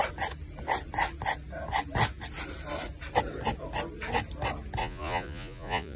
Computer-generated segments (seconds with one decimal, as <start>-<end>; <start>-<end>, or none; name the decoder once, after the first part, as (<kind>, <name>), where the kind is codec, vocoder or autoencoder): 4.8-6.0 (vocoder, Vocos)